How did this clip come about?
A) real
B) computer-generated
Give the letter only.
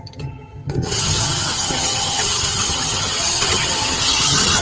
B